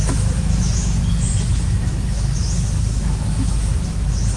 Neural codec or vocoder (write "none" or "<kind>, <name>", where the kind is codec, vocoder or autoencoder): autoencoder, DAC-VAE